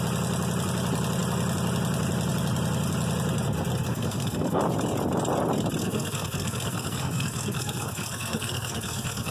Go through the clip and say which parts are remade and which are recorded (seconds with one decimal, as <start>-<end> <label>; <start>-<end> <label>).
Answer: 0.0-3.9 recorded; 3.9-4.6 remade; 4.6-5.8 recorded; 5.8-9.3 remade